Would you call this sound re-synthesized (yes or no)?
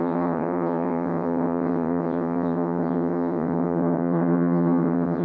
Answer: yes